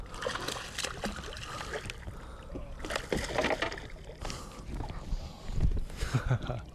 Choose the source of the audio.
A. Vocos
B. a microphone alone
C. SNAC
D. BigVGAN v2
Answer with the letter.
B